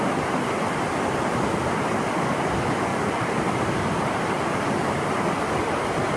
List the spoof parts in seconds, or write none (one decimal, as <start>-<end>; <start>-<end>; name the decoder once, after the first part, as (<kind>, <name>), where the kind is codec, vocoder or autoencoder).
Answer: 2.9-4.2 (vocoder, BigVGAN v2)